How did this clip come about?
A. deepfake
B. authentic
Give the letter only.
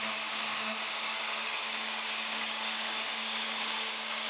A